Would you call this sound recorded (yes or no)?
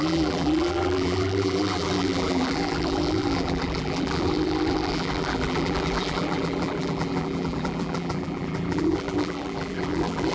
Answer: no